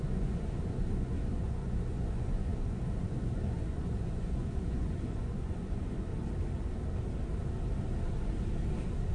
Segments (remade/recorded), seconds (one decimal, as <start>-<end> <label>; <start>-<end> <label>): 0.0-6.1 remade; 6.1-9.1 recorded

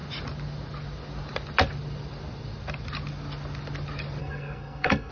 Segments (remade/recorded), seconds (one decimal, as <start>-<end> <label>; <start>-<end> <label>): 0.0-4.2 recorded; 4.2-5.1 remade